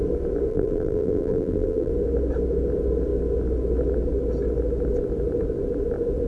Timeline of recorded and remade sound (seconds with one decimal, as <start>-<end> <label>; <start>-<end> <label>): 0.0-0.5 recorded; 0.5-1.9 remade; 1.9-6.3 recorded